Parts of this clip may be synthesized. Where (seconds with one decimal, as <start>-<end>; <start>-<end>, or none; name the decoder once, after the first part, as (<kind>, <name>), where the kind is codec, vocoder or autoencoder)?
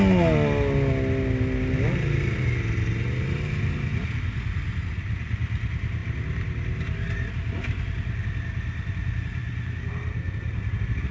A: none